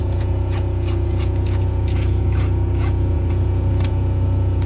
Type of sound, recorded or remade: remade